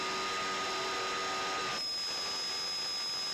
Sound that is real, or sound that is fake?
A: real